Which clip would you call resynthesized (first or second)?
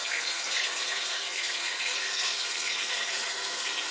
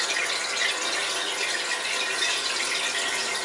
first